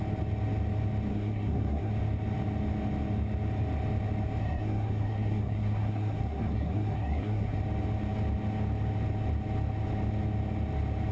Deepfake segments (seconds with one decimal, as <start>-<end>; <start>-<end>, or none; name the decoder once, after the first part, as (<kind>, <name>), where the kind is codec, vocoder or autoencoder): 1.1-1.9 (codec, SNAC); 4.4-7.6